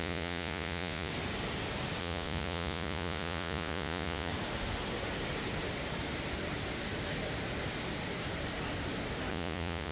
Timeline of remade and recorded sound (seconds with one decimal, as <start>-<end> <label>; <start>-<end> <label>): 0.0-1.1 remade; 1.1-2.0 recorded; 2.0-4.3 remade; 4.3-9.3 recorded; 9.3-9.9 remade